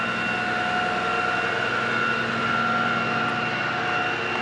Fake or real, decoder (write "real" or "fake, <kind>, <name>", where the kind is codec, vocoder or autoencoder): real